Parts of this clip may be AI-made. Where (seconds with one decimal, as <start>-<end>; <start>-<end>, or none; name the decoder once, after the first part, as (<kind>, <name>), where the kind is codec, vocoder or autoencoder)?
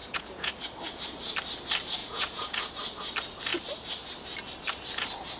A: 0.0-0.5 (vocoder, Vocos); 2.0-2.7